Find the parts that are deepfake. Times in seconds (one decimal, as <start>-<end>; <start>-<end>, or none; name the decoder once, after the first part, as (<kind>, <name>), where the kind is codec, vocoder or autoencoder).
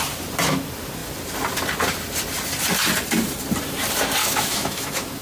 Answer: 4.2-5.2 (autoencoder, DAC-VAE)